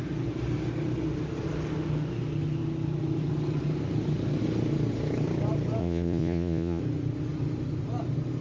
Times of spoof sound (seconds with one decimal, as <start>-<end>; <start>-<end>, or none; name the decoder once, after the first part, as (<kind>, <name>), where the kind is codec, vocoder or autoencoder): 5.8-6.8 (vocoder, Vocos)